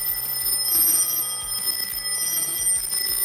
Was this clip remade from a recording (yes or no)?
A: no